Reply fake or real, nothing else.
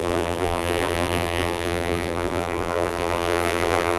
fake